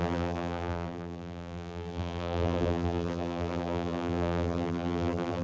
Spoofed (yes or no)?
yes